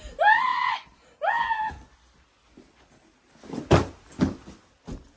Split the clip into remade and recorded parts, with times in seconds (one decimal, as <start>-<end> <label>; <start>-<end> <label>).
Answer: 0.0-5.2 recorded